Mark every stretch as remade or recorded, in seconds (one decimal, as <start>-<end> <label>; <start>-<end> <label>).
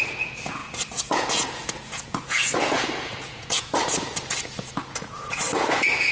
0.0-6.1 remade